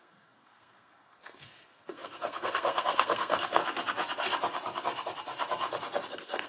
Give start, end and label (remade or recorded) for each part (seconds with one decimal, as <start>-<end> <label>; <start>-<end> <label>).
0.0-3.6 remade; 3.6-6.1 recorded; 6.1-6.5 remade